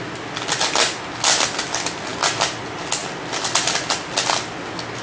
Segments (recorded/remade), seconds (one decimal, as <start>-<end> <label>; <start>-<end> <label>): 0.0-5.0 recorded